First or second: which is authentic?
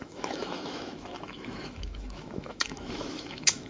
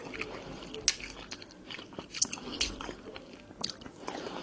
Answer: second